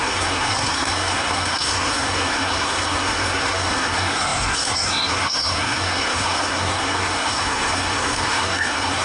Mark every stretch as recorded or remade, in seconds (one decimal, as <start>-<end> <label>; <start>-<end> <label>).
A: 0.0-9.0 remade